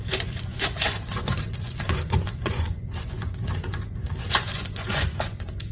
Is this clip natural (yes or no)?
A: no